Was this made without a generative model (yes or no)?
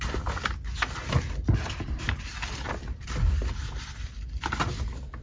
yes